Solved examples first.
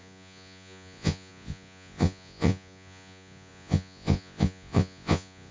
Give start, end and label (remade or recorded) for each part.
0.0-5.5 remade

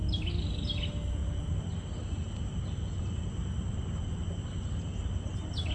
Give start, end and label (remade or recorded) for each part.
0.0-5.7 recorded

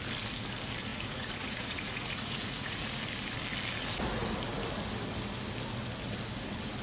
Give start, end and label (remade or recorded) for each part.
0.0-0.9 recorded; 0.9-3.0 remade; 3.0-6.8 recorded